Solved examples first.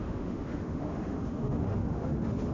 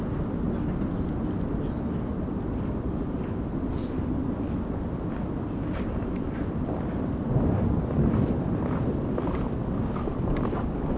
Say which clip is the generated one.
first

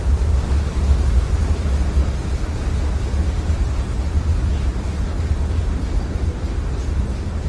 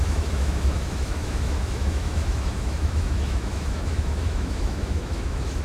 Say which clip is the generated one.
second